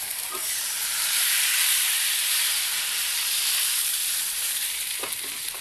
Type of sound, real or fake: fake